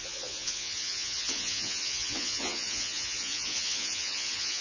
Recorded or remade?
remade